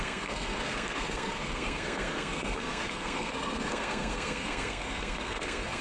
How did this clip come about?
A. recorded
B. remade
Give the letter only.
B